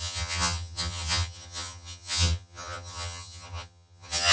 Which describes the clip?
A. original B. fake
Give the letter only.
B